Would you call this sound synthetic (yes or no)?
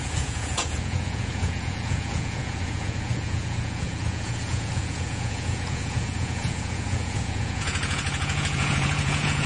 yes